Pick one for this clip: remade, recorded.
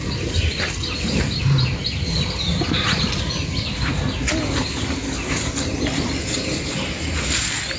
recorded